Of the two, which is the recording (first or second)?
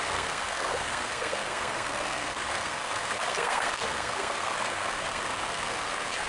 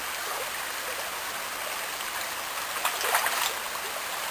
second